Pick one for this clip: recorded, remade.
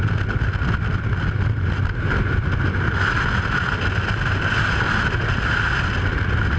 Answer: recorded